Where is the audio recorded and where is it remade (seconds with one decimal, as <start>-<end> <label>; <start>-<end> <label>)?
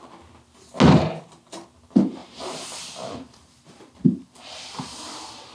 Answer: 0.0-2.2 recorded; 2.2-5.5 remade